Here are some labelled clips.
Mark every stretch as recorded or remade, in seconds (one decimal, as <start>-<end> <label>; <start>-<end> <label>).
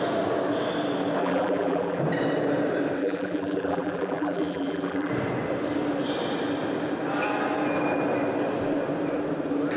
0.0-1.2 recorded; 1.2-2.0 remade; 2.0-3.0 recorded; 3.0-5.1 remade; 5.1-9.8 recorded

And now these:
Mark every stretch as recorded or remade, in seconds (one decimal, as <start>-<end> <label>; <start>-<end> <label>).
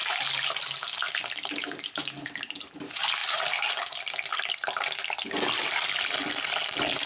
0.0-4.3 recorded; 4.3-5.2 remade; 5.2-7.1 recorded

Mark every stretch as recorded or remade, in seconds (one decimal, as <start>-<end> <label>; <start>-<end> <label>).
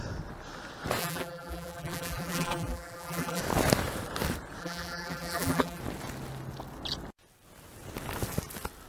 0.0-1.0 recorded; 1.0-3.4 remade; 3.4-4.6 recorded; 4.6-5.8 remade; 5.8-8.9 recorded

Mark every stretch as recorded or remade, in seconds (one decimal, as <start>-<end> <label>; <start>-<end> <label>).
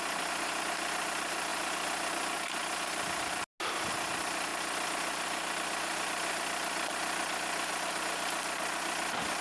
0.0-9.4 recorded